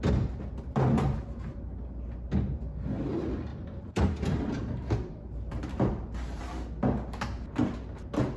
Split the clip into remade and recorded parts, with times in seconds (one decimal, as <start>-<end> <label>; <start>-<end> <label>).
0.0-3.5 recorded; 3.5-6.4 remade; 6.4-8.4 recorded